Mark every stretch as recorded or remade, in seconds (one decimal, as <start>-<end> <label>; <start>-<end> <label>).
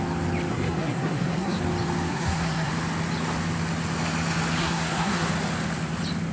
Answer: 0.0-0.5 recorded; 0.5-1.6 remade; 1.6-2.1 recorded; 2.1-2.7 remade; 2.7-4.6 recorded; 4.6-5.3 remade; 5.3-6.3 recorded